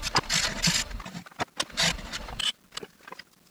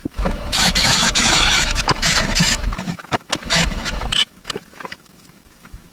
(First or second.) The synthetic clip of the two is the second